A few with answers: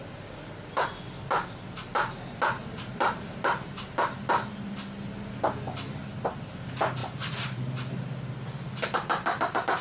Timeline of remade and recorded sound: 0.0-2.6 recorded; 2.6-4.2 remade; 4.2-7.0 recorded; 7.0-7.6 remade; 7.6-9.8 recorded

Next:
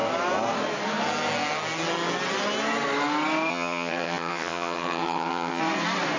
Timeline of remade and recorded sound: 0.0-3.5 recorded; 3.5-5.6 remade; 5.6-6.2 recorded

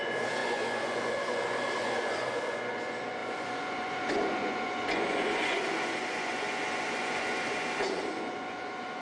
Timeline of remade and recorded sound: 0.0-9.0 remade

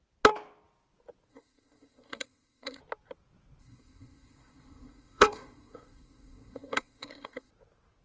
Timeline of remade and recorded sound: 0.0-1.3 recorded; 1.3-2.8 remade; 2.8-3.6 recorded; 3.6-7.5 remade; 7.5-8.0 recorded

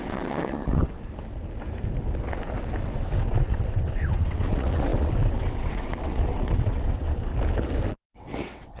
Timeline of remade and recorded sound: 0.0-0.8 remade; 0.8-2.8 recorded; 2.8-7.3 remade; 7.3-7.9 recorded; 7.9-8.8 remade